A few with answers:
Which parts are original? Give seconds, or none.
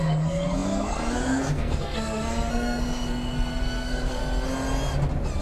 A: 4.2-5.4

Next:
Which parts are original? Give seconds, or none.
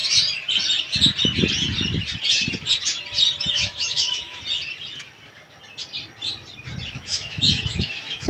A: 0.0-3.5; 4.4-6.9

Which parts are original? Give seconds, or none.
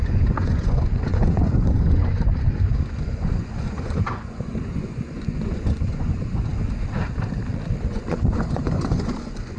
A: 6.5-7.8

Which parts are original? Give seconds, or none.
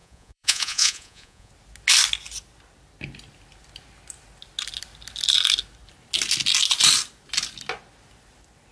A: 1.5-8.7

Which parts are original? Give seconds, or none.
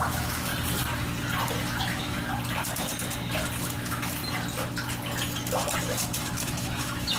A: 0.5-1.6; 2.3-3.6; 4.2-5.8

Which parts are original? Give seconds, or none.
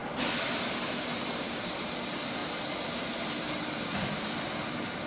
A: 0.0-5.1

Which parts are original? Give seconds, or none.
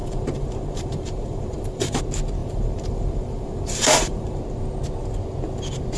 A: 2.0-2.4; 4.4-6.0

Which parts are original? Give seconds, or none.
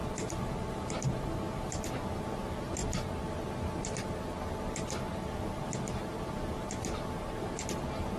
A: 0.0-8.2